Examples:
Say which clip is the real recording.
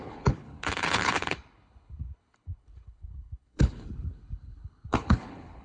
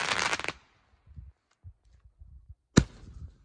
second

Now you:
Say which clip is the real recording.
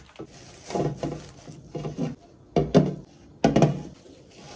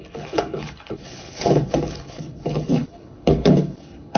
first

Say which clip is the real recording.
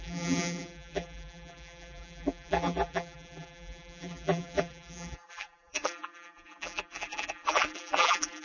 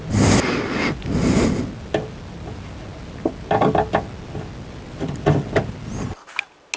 second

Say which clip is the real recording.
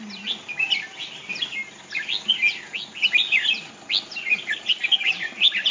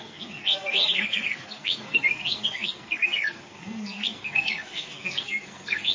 first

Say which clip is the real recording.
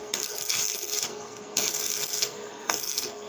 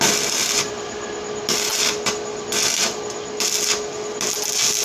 second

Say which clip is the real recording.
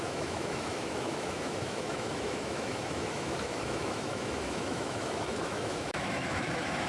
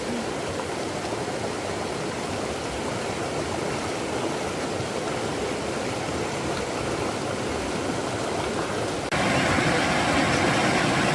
second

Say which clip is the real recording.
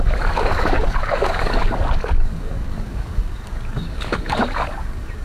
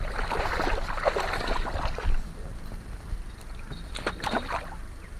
second